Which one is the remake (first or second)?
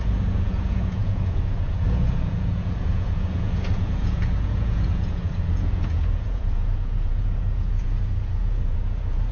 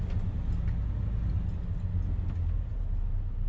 first